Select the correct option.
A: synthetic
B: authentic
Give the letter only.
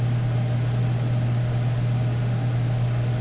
B